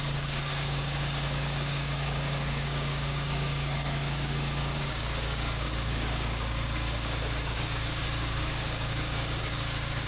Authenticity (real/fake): fake